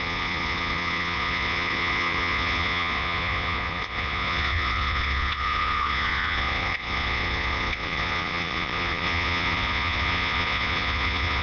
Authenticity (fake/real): fake